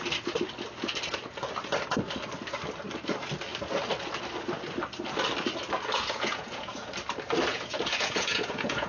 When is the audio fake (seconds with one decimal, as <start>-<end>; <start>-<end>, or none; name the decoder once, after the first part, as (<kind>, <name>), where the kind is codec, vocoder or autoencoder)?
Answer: 6.0-6.9 (vocoder, Vocos); 7.5-8.9